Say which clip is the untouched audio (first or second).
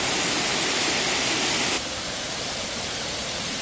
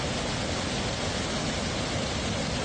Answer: second